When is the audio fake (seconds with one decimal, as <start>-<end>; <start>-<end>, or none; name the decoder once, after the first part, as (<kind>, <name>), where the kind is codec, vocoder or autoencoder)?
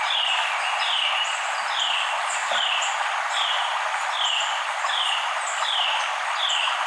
none